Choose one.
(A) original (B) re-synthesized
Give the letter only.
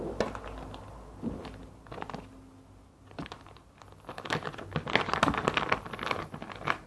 A